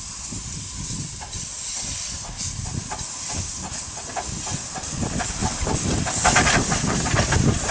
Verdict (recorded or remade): recorded